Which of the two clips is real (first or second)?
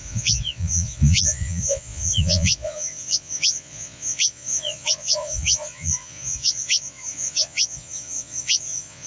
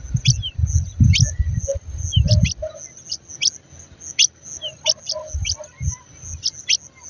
second